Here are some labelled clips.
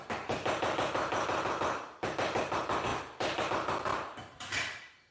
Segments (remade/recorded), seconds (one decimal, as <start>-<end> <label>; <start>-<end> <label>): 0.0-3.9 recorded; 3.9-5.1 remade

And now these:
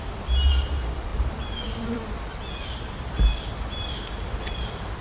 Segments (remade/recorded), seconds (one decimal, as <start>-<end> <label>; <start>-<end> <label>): 0.0-5.0 recorded

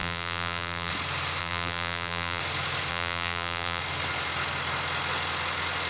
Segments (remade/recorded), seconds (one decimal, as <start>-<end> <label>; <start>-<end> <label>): 0.0-0.9 remade; 0.9-1.4 recorded; 1.4-2.4 remade; 2.4-2.9 recorded; 2.9-3.8 remade; 3.8-5.9 recorded